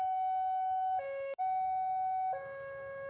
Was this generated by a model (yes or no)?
yes